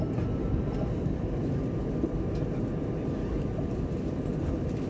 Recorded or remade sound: recorded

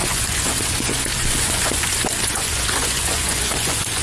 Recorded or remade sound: remade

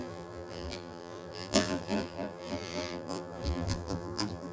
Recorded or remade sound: remade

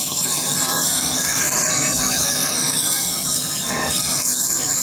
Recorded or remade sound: remade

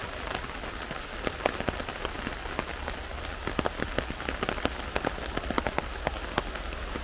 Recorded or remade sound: recorded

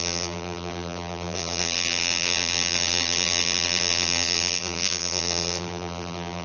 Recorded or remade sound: remade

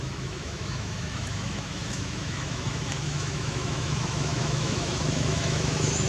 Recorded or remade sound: remade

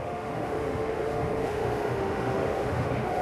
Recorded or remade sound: remade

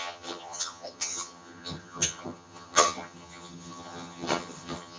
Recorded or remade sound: remade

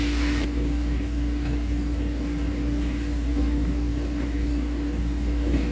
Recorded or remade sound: remade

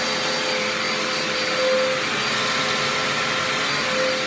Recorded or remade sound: recorded